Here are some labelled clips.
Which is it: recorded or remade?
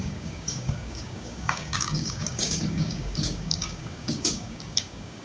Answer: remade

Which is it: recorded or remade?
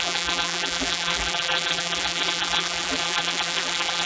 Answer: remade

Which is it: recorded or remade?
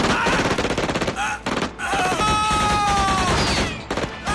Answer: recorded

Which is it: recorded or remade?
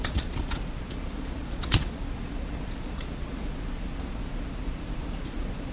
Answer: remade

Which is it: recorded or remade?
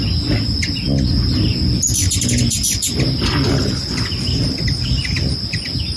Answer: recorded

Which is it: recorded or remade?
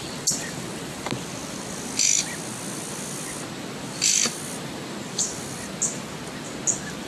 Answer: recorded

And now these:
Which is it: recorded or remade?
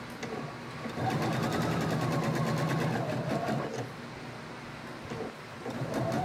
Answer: recorded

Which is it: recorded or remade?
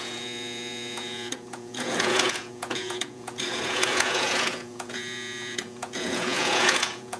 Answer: remade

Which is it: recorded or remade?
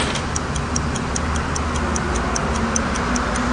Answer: recorded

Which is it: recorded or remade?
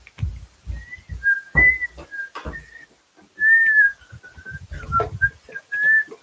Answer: recorded